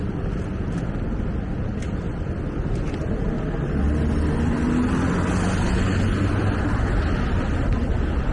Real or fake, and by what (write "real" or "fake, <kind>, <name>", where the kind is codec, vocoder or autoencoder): real